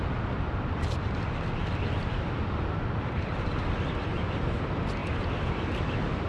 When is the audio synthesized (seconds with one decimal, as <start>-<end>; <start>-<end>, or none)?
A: none